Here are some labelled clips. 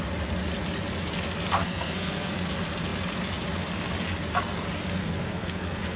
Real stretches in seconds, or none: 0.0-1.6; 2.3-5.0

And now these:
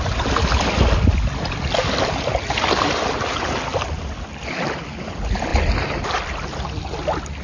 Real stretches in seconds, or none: 0.0-7.4